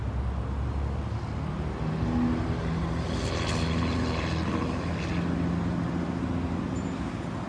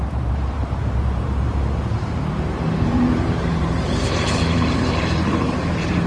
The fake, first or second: second